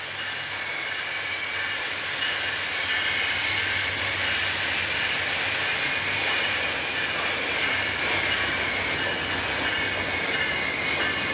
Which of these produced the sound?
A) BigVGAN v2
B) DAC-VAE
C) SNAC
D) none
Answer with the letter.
D